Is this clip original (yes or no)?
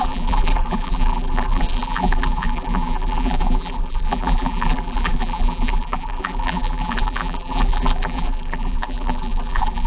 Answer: no